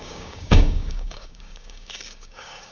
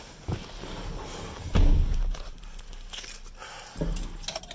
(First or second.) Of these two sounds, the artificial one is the first